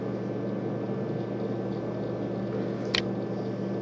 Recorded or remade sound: recorded